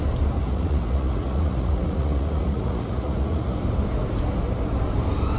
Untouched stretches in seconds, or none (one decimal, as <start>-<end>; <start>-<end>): 0.0-0.4; 3.6-5.4